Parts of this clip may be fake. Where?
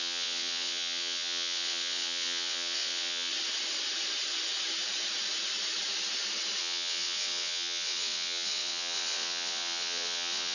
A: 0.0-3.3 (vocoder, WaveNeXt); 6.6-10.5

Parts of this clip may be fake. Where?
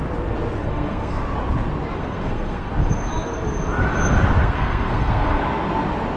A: 0.6-1.2 (codec, SNAC); 2.0-2.7; 4.4-5.4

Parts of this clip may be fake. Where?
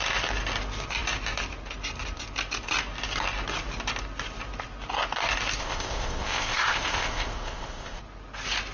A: 5.6-8.0 (codec, ZipCodec)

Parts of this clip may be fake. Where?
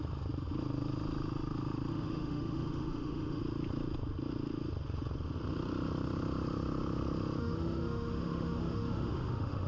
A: 1.9-3.4 (autoencoder, DAC-VAE); 7.4-9.7